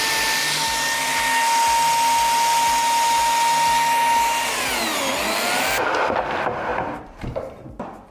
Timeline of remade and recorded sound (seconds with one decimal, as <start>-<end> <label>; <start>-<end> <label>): 0.0-8.1 recorded